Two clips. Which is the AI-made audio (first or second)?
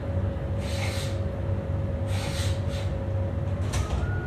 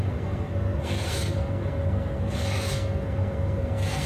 second